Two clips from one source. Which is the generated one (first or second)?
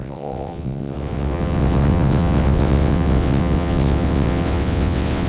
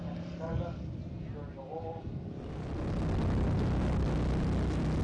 first